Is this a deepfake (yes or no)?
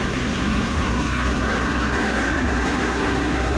yes